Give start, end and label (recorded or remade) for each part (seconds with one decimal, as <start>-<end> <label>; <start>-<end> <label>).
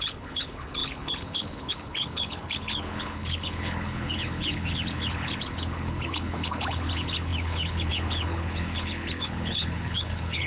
0.0-10.5 remade